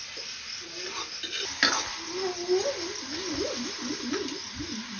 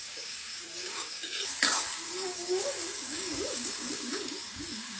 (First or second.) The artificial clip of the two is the second